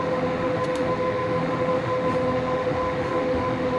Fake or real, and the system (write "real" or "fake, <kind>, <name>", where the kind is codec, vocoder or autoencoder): fake, autoencoder, DAC-VAE